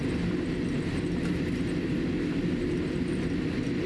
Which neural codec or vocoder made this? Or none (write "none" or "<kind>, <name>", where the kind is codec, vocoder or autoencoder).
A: none